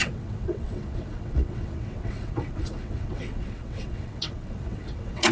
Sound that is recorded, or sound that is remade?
remade